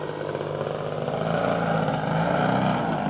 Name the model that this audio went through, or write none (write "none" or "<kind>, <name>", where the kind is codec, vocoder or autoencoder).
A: none